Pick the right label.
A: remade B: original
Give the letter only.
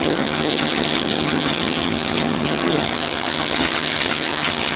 A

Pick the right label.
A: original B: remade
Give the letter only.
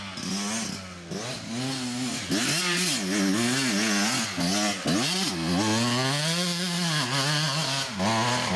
A